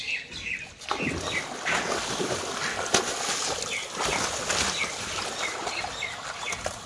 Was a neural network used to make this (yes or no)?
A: no